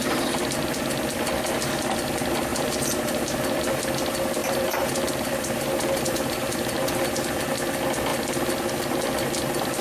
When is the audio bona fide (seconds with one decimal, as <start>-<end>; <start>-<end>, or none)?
0.0-2.5; 3.8-4.4; 7.5-9.8